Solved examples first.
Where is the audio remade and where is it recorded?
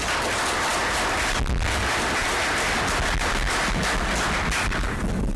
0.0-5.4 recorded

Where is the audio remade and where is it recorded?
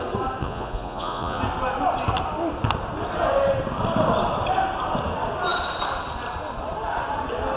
0.0-0.4 recorded; 0.4-1.4 remade; 1.4-7.6 recorded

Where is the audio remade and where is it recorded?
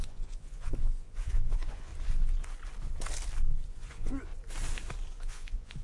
0.0-1.9 remade; 1.9-3.7 recorded; 3.7-4.3 remade; 4.3-5.1 recorded; 5.1-5.8 remade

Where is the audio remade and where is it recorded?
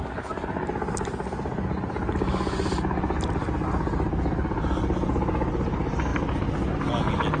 0.0-7.4 recorded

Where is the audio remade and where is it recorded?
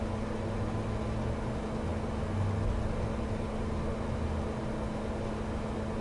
0.0-6.0 recorded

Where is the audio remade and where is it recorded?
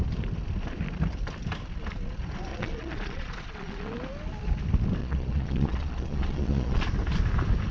0.0-2.5 recorded; 2.5-3.9 remade; 3.9-5.0 recorded; 5.0-6.9 remade; 6.9-7.7 recorded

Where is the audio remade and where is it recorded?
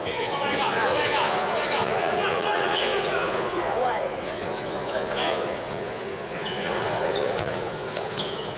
0.0-8.6 remade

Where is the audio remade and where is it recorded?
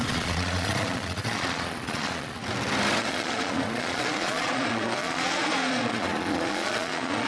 0.0-2.4 remade; 2.4-3.0 recorded; 3.0-7.3 remade